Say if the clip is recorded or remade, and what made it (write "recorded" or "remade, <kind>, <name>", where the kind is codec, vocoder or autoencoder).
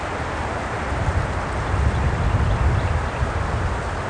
recorded